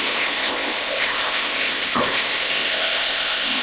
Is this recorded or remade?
remade